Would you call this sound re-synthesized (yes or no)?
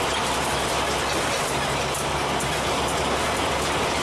no